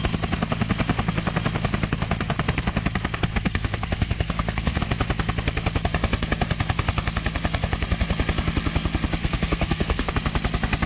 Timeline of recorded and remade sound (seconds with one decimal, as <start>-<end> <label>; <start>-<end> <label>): 0.0-3.3 recorded; 3.3-4.8 remade; 4.8-9.2 recorded; 9.2-10.1 remade; 10.1-10.9 recorded